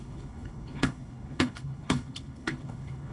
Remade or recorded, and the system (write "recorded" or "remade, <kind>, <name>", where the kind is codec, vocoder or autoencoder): remade, codec, HILCodec